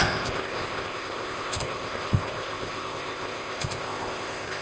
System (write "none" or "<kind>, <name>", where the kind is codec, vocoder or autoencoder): codec, ZipCodec